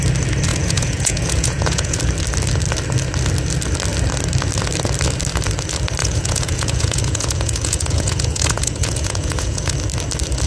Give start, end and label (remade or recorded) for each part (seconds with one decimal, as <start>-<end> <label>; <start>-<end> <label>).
0.0-0.5 recorded; 0.5-2.0 remade; 2.0-6.0 recorded; 6.0-9.7 remade; 9.7-10.5 recorded